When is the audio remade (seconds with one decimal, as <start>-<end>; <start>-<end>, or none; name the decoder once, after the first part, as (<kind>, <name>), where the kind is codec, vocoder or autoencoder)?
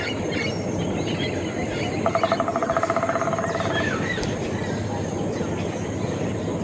none